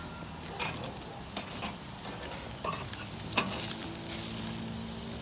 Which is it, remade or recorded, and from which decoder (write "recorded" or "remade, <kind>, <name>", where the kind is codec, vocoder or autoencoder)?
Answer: recorded